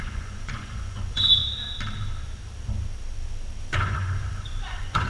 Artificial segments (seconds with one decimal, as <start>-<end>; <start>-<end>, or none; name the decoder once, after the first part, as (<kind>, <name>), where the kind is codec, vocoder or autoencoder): 0.0-1.4 (vocoder, Vocos); 3.6-5.1